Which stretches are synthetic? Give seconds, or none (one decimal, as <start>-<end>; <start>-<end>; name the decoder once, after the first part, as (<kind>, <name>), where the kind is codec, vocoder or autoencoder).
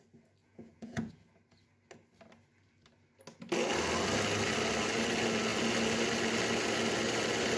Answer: 0.4-1.1 (vocoder, Vocos)